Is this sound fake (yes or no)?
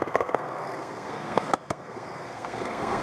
yes